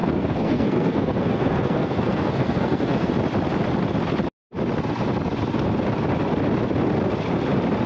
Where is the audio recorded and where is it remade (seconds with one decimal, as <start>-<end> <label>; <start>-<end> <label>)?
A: 0.0-3.1 remade; 3.1-7.9 recorded